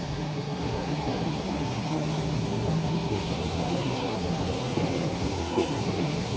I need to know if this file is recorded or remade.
remade